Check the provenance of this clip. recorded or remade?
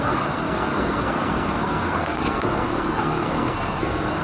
remade